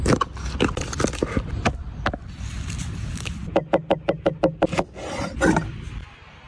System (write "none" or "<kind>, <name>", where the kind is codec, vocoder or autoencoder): none